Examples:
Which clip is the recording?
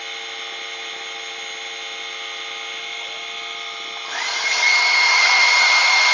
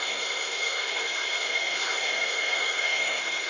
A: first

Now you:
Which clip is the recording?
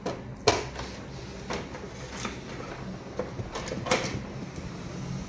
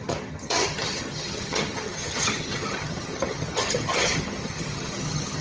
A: first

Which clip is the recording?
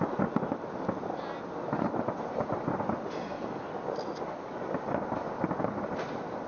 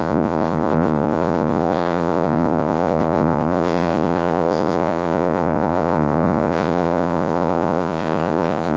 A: first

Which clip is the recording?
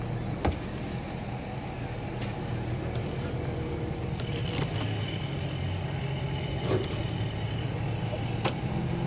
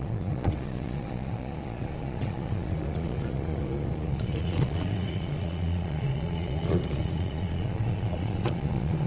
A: first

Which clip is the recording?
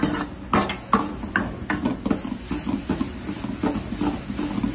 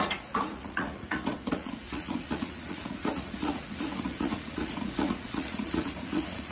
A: first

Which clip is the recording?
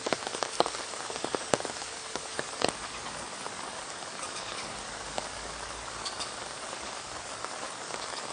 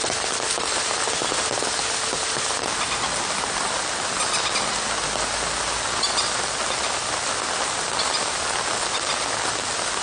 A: second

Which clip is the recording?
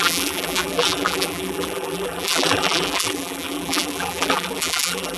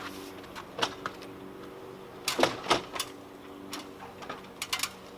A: second